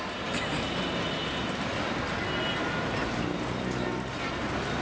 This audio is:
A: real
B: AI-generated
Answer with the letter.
A